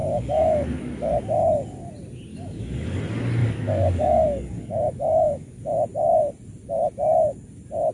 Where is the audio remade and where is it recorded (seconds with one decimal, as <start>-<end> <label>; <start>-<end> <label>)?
0.0-1.1 remade; 1.1-2.3 recorded; 2.3-3.0 remade; 3.0-3.4 recorded; 3.4-5.6 remade; 5.6-7.9 recorded